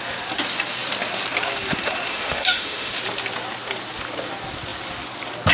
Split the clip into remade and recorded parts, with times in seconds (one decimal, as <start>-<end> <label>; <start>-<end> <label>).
0.0-2.1 recorded; 2.1-2.9 remade; 2.9-5.5 recorded